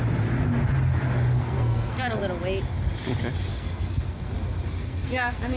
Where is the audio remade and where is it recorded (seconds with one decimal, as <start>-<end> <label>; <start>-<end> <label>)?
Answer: 0.0-1.3 recorded; 1.3-2.2 remade; 2.2-3.5 recorded; 3.5-4.3 remade; 4.3-4.8 recorded; 4.8-5.6 remade